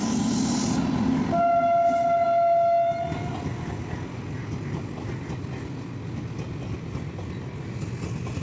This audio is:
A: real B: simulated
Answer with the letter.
A